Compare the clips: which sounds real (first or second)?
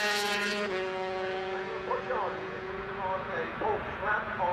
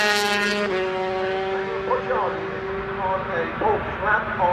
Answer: second